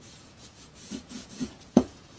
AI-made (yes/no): yes